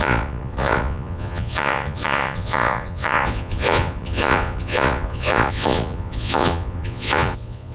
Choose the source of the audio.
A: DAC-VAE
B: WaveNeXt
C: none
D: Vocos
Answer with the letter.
D